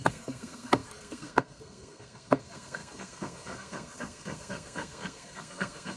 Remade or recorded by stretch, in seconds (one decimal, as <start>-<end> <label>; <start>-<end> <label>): 0.0-6.0 remade